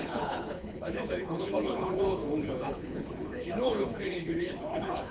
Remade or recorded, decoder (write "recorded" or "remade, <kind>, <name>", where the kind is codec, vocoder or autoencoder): remade, codec, HILCodec